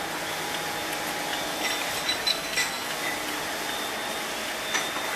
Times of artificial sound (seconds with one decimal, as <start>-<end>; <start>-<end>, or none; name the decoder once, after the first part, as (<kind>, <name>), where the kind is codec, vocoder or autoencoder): 2.3-2.9 (codec, SNAC)